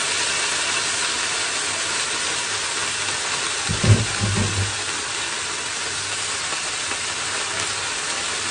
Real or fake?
real